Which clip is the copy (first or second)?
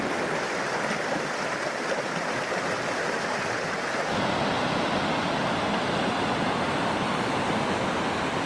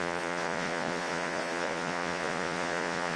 second